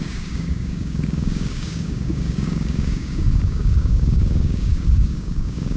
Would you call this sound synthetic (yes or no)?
yes